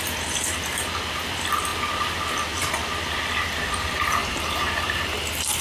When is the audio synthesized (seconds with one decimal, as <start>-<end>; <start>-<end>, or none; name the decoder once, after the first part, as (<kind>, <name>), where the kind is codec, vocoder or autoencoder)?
4.2-5.1 (vocoder, BigVGAN v2)